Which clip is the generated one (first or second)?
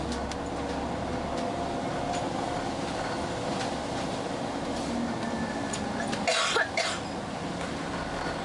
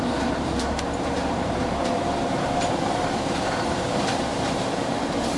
second